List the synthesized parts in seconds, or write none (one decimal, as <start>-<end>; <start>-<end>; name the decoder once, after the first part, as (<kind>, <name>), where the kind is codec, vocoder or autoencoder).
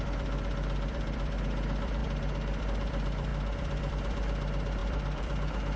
0.0-5.8 (vocoder, BigVGAN v2)